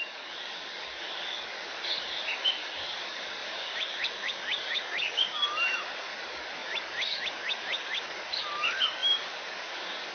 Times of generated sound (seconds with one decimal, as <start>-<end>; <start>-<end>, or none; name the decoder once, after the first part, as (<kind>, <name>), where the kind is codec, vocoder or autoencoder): 0.0-10.1 (codec, DAC)